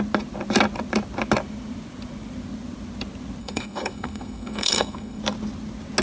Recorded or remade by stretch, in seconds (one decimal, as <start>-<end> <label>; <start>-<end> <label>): 0.0-3.4 recorded; 3.4-5.2 remade; 5.2-6.0 recorded